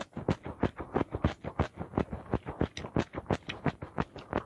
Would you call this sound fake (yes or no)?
no